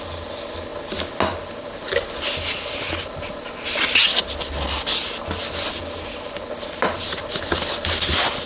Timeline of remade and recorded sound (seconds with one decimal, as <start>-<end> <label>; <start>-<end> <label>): 0.0-8.5 recorded